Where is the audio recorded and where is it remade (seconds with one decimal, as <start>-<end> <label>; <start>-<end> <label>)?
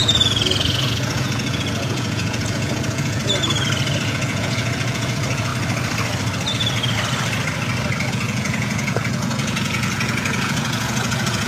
0.0-3.2 remade; 3.2-4.0 recorded; 4.0-5.5 remade; 5.5-8.1 recorded; 8.1-11.5 remade